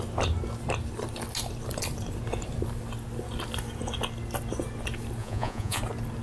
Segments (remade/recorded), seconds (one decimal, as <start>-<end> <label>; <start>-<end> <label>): 0.0-5.2 recorded; 5.2-5.8 remade; 5.8-6.2 recorded